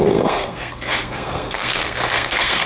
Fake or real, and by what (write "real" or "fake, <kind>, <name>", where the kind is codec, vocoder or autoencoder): fake, codec, SNAC